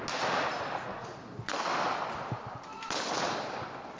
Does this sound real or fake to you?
real